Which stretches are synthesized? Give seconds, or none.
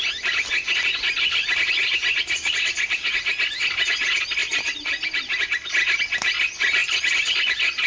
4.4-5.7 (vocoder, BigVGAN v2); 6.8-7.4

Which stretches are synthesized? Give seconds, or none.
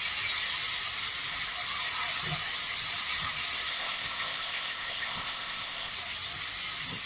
3.7-5.9 (codec, ZipCodec)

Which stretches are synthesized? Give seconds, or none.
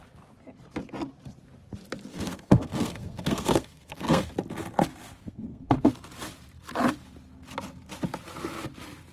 2.1-4.3 (codec, SNAC); 5.2-5.9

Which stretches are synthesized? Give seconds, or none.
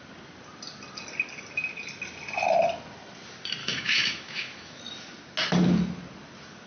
3.6-4.8 (autoencoder, DAC-VAE)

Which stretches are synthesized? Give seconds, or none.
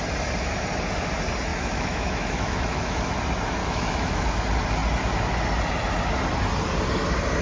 1.5-3.1 (autoencoder, DAC-VAE); 3.6-4.3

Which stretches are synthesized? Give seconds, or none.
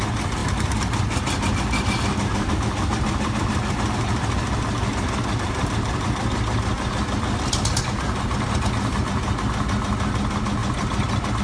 none